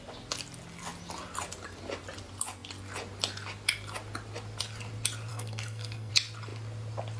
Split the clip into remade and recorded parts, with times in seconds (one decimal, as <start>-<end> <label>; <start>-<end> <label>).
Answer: 0.0-5.3 recorded; 5.3-6.1 remade; 6.1-7.2 recorded